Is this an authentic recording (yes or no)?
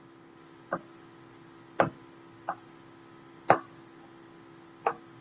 yes